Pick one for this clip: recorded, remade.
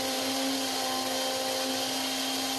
recorded